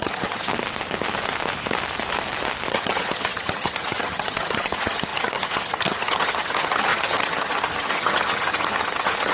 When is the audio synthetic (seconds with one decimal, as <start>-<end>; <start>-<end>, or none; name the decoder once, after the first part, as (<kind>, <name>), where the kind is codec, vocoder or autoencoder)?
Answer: 0.0-0.5 (vocoder, HiFi-GAN); 2.7-9.3